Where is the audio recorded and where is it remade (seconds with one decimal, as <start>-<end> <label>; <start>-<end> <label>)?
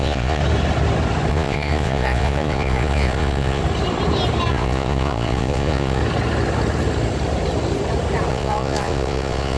0.0-0.4 remade; 0.4-1.3 recorded; 1.3-3.6 remade; 3.6-4.5 recorded; 4.5-6.0 remade; 6.0-8.3 recorded; 8.3-9.6 remade